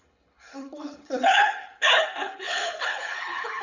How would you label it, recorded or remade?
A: remade